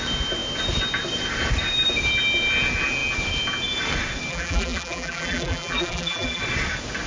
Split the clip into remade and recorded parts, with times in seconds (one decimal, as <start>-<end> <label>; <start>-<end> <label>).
0.0-4.3 recorded; 4.3-6.4 remade; 6.4-7.1 recorded